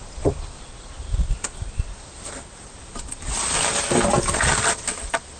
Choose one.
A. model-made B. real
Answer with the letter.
B